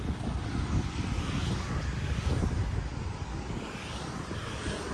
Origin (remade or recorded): remade